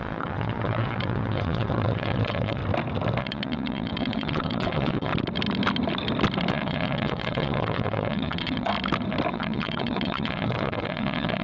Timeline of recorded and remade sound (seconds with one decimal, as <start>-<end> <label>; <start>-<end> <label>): 0.0-2.6 remade; 2.6-3.2 recorded; 3.2-5.1 remade; 5.1-6.5 recorded; 6.5-8.7 remade; 8.7-9.3 recorded; 9.3-11.4 remade

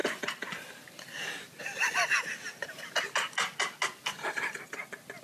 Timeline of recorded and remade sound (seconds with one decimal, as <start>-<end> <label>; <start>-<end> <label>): 0.0-0.8 remade; 0.8-5.2 recorded

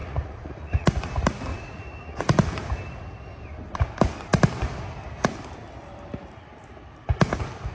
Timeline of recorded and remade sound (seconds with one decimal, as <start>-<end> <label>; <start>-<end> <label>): 0.0-1.0 remade; 1.0-1.5 recorded; 1.5-2.2 remade; 2.2-7.7 recorded

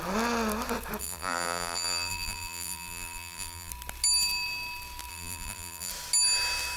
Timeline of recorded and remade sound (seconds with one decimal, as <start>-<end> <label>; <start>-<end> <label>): 0.0-1.0 recorded; 1.0-3.7 remade; 3.7-5.1 recorded; 5.1-5.9 remade; 5.9-6.8 recorded